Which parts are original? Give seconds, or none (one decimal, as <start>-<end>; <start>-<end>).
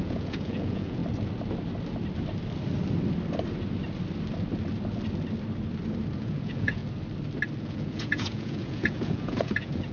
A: 1.0-6.2; 6.8-7.6